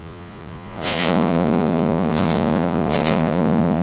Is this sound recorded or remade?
remade